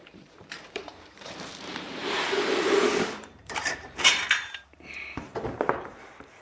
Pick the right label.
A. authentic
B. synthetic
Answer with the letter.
B